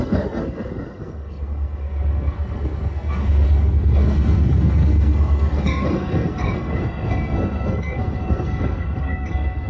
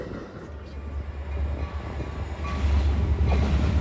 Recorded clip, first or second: second